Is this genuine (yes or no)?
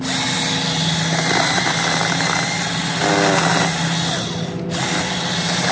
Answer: yes